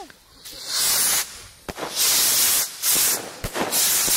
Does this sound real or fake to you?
real